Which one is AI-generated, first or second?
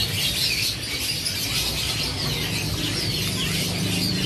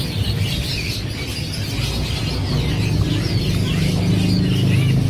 first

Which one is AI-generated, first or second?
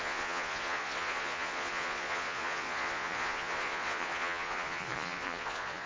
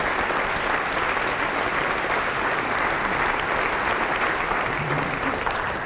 first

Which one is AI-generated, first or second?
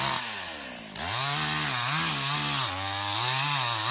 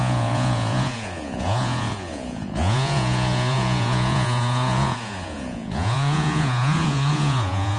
second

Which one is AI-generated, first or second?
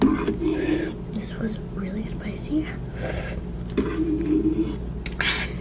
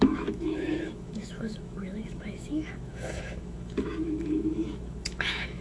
second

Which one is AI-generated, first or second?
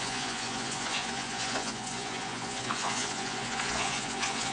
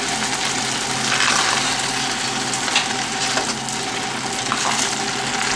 first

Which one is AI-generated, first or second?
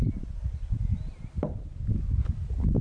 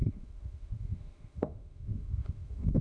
second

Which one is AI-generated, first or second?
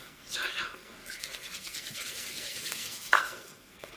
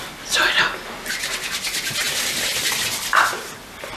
first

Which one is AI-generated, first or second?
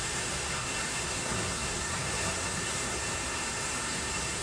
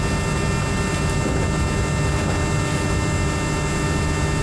first